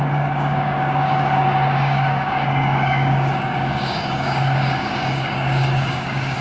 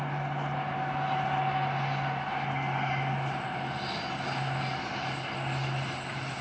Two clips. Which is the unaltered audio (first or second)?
second